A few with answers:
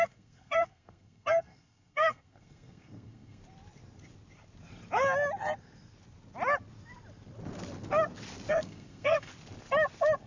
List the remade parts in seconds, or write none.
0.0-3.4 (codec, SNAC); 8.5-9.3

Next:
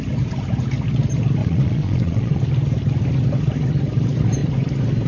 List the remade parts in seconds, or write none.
1.4-2.4 (vocoder, Vocos)

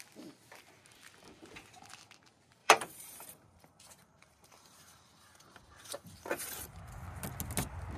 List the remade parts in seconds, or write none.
2.6-6.9 (vocoder, BigVGAN v2)

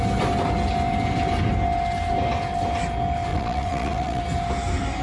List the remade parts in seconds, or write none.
3.3-4.2 (vocoder, WaveNeXt)

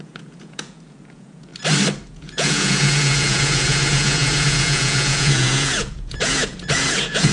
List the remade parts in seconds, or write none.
0.0-1.5 (vocoder, Vocos); 2.1-7.3

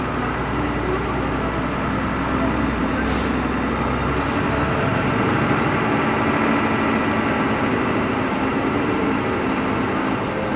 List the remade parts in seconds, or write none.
2.8-3.3 (vocoder, BigVGAN v2); 4.9-5.9; 8.5-9.2